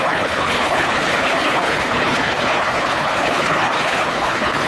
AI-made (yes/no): yes